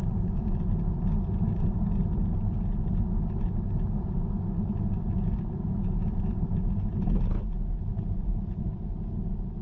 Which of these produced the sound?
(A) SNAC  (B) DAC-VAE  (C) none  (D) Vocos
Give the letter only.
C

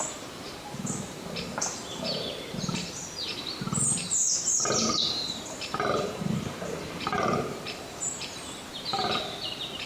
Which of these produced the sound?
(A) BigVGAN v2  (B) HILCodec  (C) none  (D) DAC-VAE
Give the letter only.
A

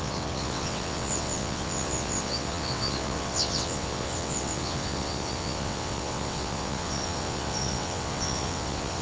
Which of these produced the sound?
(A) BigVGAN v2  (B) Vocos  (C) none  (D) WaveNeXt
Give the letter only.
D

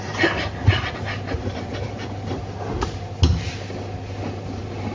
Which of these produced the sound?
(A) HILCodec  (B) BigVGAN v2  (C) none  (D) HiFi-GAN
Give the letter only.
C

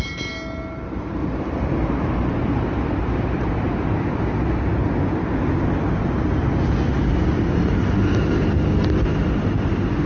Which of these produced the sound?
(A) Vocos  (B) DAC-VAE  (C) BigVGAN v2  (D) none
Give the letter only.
D